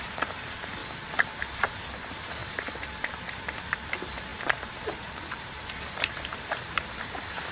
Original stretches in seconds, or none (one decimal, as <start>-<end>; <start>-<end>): 0.8-1.6